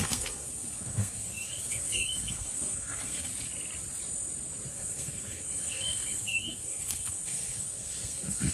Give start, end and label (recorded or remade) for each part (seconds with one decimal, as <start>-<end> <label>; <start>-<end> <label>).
0.0-3.3 remade; 3.3-4.7 recorded; 4.7-8.5 remade